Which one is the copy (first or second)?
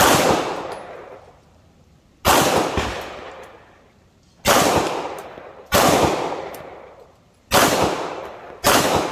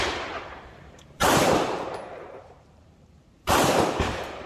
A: second